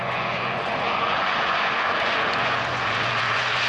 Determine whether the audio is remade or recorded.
remade